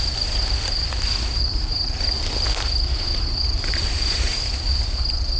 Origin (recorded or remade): recorded